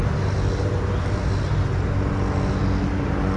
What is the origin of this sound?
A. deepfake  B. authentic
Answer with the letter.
B